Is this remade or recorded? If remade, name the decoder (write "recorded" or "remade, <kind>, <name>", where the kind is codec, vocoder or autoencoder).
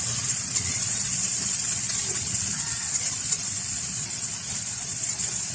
remade, vocoder, Vocos